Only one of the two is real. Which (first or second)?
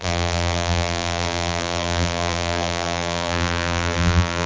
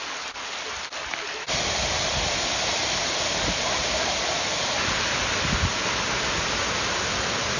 second